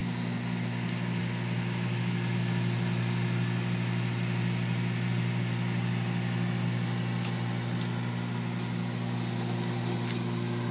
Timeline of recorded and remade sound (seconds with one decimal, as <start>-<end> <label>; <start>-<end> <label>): 0.0-10.7 recorded